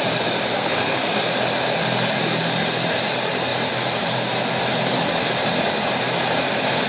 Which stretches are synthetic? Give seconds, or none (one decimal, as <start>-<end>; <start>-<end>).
0.5-1.1